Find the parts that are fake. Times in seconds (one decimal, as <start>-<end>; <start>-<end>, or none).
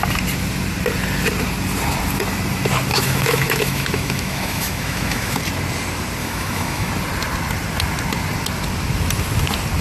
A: 2.9-5.4; 6.2-6.9